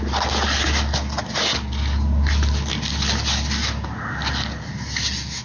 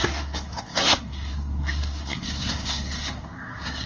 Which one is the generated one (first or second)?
second